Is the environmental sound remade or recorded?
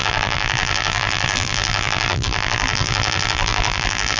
remade